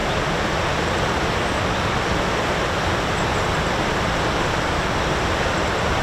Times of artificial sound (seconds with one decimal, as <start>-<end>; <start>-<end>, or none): none